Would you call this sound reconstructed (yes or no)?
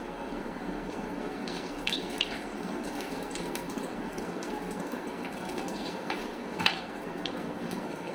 yes